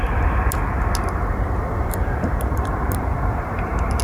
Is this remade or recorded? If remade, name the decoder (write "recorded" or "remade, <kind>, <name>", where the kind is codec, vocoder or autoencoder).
remade, vocoder, BigVGAN v2